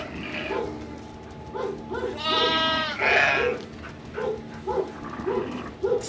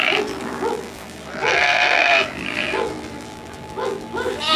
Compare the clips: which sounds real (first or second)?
first